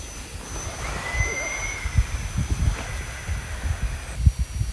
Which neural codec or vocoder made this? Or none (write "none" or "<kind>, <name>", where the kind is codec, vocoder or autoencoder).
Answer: none